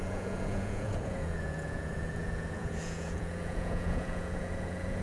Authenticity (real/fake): fake